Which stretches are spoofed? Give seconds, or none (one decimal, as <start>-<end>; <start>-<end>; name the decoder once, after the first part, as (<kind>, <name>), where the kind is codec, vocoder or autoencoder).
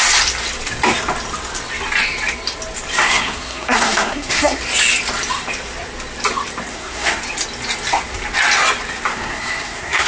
3.0-4.6 (codec, SNAC); 6.7-7.2; 9.1-10.1